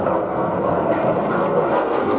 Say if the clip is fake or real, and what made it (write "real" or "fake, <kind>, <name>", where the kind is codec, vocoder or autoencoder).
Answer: fake, codec, SNAC